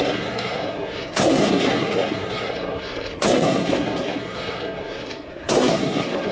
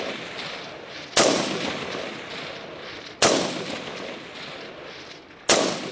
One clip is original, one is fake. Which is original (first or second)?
second